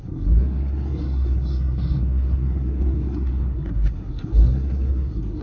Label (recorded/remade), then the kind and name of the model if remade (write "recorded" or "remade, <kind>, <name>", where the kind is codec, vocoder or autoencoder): remade, codec, SNAC